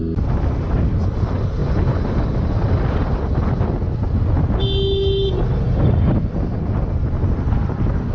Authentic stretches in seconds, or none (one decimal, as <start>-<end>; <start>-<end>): 0.0-1.6; 3.1-8.1